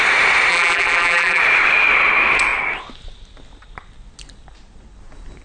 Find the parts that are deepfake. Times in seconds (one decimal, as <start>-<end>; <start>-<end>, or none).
0.5-1.4

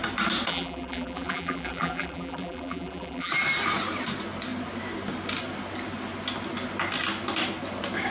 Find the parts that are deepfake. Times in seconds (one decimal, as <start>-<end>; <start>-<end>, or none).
0.5-3.3

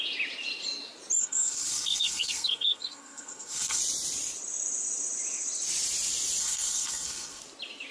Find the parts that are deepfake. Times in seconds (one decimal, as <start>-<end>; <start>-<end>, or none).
1.2-3.8; 6.4-7.4

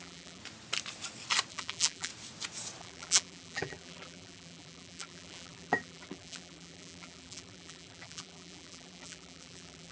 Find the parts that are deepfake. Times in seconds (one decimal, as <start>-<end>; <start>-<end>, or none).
0.0-0.4; 1.5-2.1; 2.8-9.9

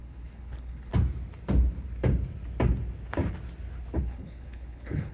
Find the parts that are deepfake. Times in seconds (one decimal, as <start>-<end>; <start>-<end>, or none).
0.0-0.9; 4.0-5.1

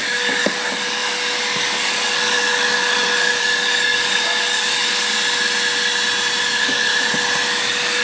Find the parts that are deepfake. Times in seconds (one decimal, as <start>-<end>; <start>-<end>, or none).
0.0-5.1; 6.4-6.9; 7.6-8.0

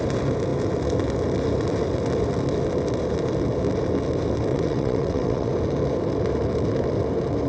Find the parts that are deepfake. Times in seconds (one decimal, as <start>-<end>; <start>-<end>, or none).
4.5-5.5

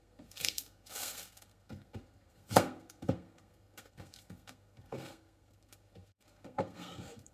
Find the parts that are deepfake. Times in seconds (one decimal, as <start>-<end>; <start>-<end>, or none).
0.0-7.3